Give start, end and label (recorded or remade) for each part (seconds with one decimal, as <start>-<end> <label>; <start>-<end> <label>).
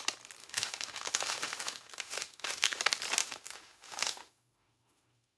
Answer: 0.0-0.4 recorded; 0.4-2.8 remade; 2.8-3.2 recorded; 3.2-5.4 remade